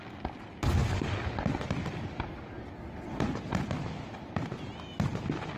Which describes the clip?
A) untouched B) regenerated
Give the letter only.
A